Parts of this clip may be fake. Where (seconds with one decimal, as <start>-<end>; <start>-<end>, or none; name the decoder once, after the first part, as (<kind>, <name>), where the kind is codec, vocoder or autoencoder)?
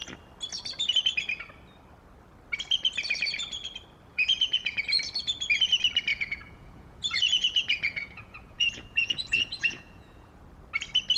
4.1-4.8 (vocoder, Vocos); 6.1-10.4